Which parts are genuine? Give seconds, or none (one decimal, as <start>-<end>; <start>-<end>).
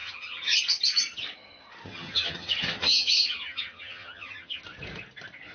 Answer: 0.6-1.9; 4.6-5.5